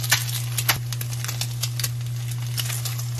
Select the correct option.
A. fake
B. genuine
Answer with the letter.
B